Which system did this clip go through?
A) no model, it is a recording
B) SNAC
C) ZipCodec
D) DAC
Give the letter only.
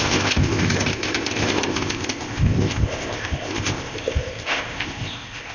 C